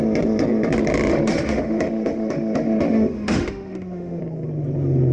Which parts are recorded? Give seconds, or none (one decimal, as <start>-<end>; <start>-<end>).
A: 0.0-1.1; 4.2-5.1